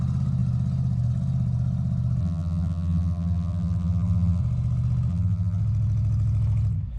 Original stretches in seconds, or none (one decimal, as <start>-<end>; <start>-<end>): 0.0-2.2; 4.4-5.1; 5.6-7.0